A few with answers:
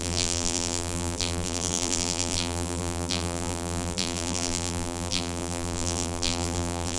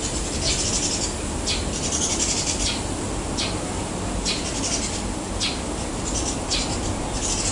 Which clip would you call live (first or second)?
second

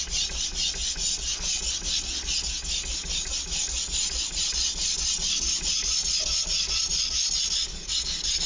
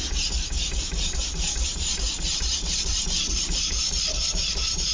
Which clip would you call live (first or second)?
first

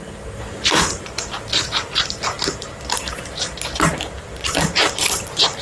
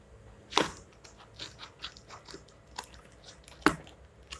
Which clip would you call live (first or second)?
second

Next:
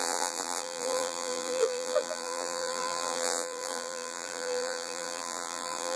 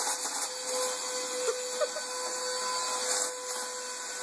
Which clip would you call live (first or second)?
second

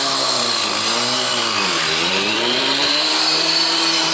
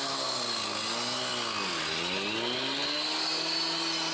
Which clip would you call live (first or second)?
second